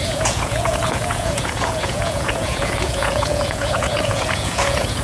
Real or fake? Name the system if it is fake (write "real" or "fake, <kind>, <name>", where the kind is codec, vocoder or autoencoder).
fake, vocoder, Vocos